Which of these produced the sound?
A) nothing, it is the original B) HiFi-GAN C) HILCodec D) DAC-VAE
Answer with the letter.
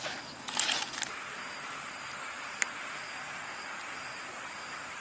A